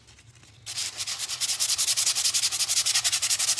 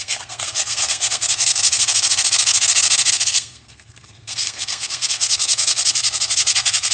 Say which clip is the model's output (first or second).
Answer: second